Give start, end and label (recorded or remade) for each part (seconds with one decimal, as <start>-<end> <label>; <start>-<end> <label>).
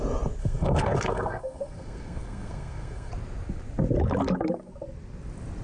0.0-0.4 recorded; 0.4-3.1 remade; 3.1-5.6 recorded